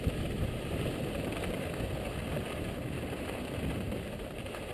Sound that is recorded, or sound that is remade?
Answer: recorded